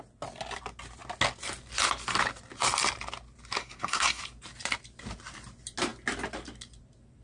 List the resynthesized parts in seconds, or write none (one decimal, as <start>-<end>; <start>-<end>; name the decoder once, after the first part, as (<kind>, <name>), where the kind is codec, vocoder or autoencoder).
3.6-4.2 (codec, SNAC)